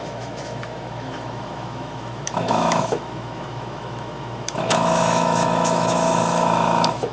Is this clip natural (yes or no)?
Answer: no